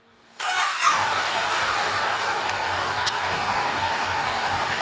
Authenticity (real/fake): fake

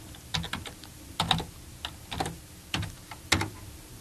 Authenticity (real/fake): real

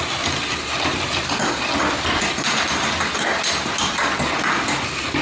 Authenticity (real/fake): real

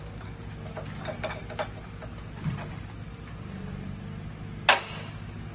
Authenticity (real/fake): real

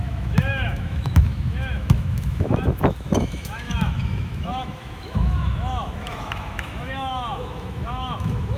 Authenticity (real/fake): fake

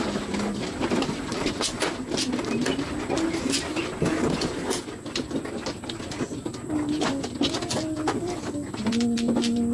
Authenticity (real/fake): real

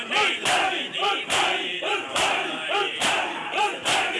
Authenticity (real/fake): fake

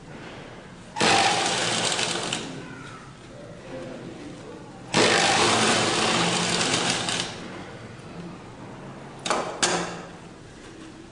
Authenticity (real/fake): real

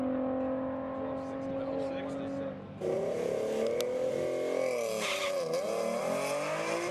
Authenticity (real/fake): real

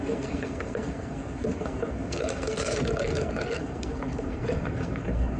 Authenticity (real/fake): fake